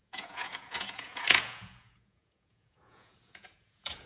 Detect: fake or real fake